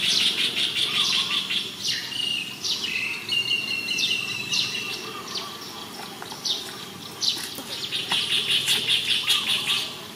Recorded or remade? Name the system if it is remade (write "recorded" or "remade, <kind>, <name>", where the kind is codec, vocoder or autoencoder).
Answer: recorded